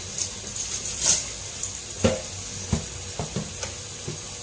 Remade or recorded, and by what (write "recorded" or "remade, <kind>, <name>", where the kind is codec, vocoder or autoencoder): recorded